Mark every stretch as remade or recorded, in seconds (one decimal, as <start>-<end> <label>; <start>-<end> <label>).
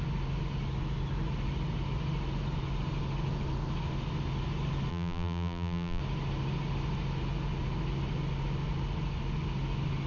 0.0-4.9 recorded; 4.9-6.0 remade; 6.0-10.1 recorded